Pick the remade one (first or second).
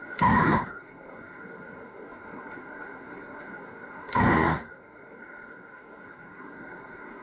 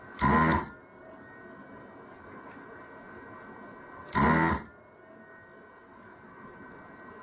first